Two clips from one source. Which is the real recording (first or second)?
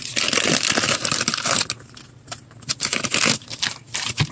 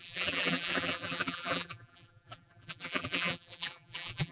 first